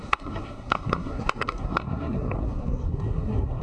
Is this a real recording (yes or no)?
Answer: no